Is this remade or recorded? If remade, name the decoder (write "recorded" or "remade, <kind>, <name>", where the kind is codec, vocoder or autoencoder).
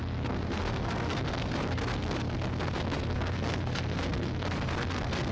remade, codec, SNAC